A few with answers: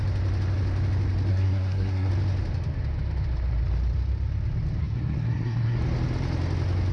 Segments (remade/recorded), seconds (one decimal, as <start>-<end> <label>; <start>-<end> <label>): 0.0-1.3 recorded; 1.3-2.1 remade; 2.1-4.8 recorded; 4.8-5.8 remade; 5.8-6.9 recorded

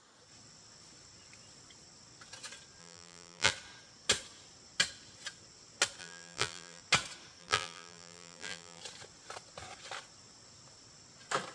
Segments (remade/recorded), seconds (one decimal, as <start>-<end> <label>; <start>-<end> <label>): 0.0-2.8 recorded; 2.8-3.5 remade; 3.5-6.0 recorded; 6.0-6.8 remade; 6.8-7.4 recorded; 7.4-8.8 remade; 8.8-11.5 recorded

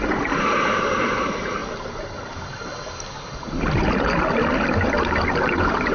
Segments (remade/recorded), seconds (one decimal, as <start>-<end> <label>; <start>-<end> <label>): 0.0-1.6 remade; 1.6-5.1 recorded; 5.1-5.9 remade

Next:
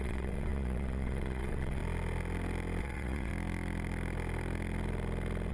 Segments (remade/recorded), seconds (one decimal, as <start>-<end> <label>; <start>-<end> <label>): 0.0-1.8 remade; 1.8-2.8 recorded; 2.8-3.3 remade; 3.3-5.5 recorded

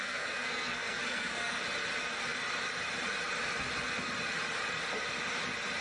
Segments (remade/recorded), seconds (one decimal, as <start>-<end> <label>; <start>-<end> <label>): 0.0-1.6 remade; 1.6-5.8 recorded